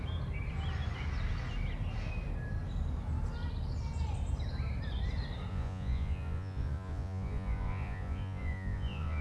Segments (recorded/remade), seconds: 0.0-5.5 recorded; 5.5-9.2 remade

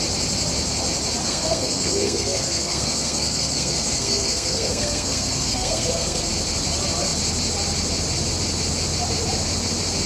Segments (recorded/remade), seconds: 0.0-1.2 recorded; 1.2-6.3 remade; 6.3-10.1 recorded

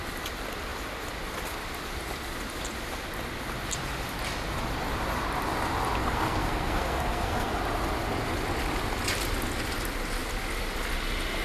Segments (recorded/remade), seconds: 0.0-6.0 recorded; 6.0-7.5 remade; 7.5-11.4 recorded

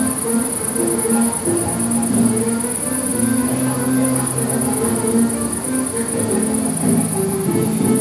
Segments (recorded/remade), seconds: 0.0-8.0 recorded

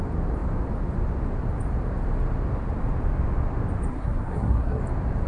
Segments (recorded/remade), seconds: 0.0-3.9 recorded; 3.9-4.8 remade; 4.8-5.3 recorded

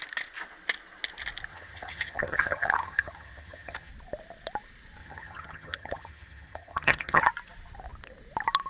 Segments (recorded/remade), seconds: 0.0-1.5 recorded; 1.5-3.9 remade; 3.9-5.0 recorded; 5.0-7.3 remade; 7.3-8.7 recorded

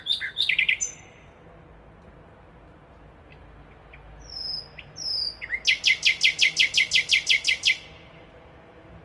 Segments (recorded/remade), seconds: 0.0-9.0 recorded

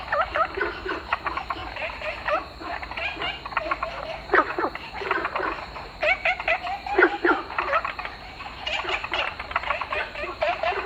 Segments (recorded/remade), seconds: 0.0-1.6 remade; 1.6-4.9 recorded; 4.9-10.9 remade